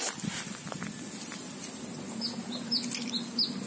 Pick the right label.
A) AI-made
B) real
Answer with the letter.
B